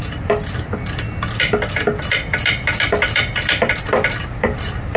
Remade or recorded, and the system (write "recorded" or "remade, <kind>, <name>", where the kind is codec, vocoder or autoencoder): recorded